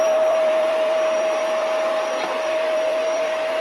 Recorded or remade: remade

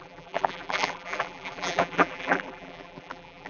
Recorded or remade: remade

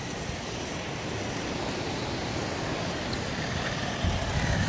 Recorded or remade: recorded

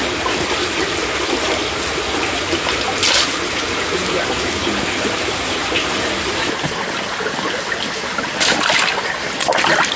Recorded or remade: recorded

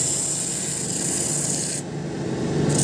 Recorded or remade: recorded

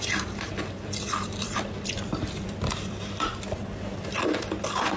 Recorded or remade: remade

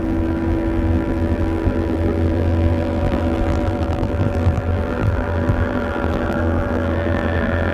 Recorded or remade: remade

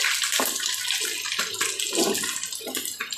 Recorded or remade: recorded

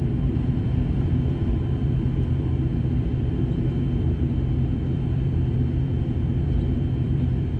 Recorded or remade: remade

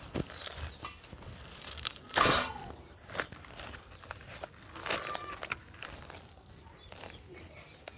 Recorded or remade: remade